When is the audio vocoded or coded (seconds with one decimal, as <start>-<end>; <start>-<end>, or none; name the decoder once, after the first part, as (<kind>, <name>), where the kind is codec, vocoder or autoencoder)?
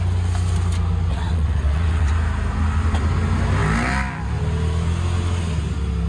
1.1-2.1 (vocoder, WaveNeXt)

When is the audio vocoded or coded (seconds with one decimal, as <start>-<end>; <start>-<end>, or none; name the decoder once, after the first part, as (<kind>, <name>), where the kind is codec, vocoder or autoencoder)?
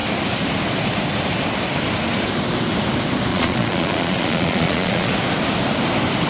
3.3-5.1 (vocoder, Vocos)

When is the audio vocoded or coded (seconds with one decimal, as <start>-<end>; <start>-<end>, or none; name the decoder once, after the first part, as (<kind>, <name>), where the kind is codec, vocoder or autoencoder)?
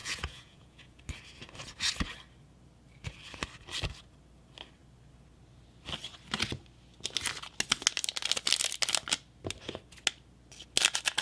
0.0-1.0 (vocoder, Vocos)